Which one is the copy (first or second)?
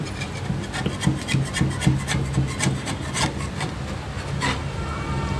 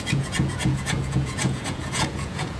second